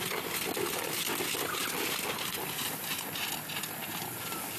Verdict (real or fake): real